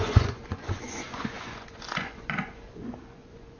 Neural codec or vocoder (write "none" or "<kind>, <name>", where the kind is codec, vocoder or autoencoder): vocoder, Vocos